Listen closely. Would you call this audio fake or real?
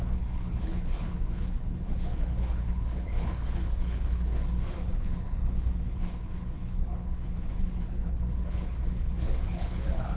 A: fake